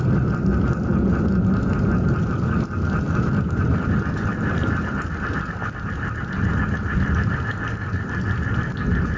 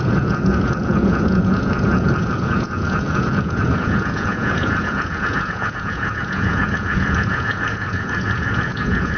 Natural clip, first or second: first